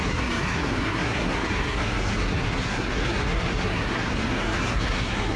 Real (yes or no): no